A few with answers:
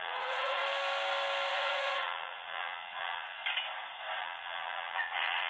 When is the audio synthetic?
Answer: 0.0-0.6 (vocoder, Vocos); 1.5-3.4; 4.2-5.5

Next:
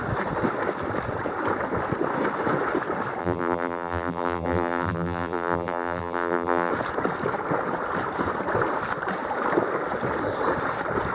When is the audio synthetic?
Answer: 3.2-6.7 (vocoder, BigVGAN v2)

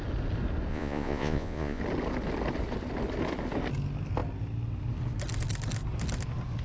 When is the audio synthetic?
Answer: 0.7-1.8 (vocoder, Vocos)

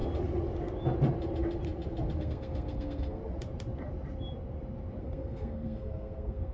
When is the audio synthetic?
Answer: 2.2-3.2 (codec, SNAC); 5.0-6.5